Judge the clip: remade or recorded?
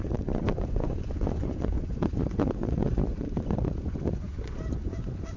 remade